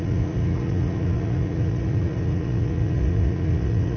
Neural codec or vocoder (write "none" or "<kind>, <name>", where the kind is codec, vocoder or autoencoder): vocoder, Vocos